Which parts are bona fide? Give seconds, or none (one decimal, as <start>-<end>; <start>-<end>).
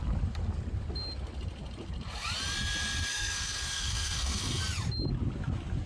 0.0-3.1; 4.6-5.9